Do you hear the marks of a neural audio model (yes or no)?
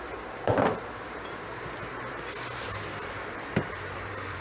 yes